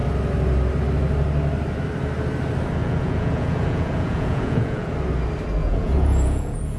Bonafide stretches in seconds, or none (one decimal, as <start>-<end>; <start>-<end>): 0.0-2.8; 4.9-5.6